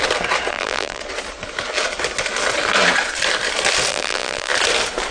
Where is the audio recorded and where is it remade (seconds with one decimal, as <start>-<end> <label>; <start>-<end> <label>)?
0.0-0.5 recorded; 0.5-1.0 remade; 1.0-3.9 recorded; 3.9-4.5 remade; 4.5-5.1 recorded